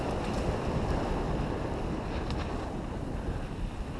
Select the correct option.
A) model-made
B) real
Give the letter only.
B